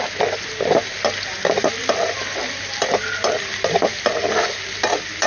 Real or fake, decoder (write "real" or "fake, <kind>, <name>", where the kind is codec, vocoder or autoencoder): real